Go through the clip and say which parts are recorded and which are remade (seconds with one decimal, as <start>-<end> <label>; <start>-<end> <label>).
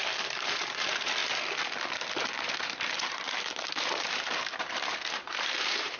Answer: 0.0-1.2 remade; 1.2-2.1 recorded; 2.1-6.0 remade